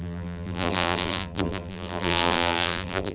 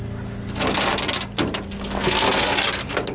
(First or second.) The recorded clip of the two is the second